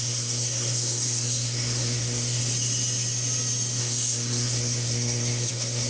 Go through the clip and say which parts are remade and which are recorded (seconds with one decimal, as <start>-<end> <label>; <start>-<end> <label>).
0.0-2.4 remade; 2.4-3.8 recorded; 3.8-5.9 remade